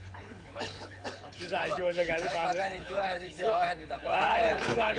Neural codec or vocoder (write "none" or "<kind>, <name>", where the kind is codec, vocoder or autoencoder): codec, HILCodec